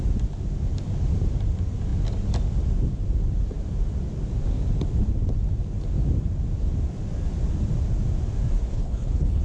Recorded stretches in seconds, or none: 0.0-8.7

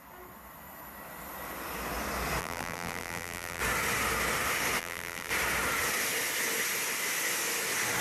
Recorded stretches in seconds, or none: 0.0-2.4; 3.6-4.8; 5.3-8.0

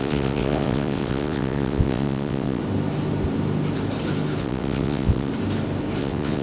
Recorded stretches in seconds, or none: 2.6-4.4; 5.3-6.0

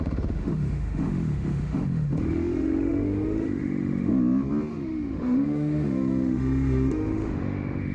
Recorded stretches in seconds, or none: 4.1-4.7

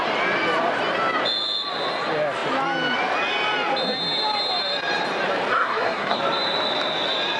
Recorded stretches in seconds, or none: 0.0-5.5; 6.2-7.4

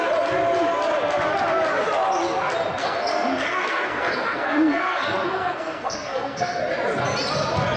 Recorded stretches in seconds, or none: 0.0-2.8; 6.6-7.8

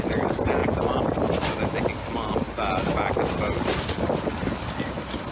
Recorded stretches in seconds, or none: 0.0-5.3